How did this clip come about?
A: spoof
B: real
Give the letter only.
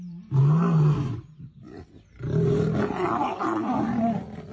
B